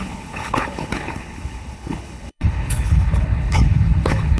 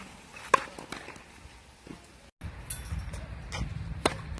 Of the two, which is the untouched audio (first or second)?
second